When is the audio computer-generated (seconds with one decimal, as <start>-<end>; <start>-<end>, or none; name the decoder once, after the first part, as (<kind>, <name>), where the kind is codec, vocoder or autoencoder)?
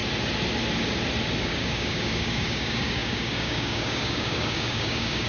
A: 1.4-5.3 (codec, DAC)